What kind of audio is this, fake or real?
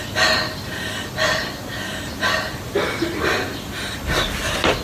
real